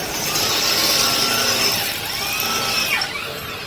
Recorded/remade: recorded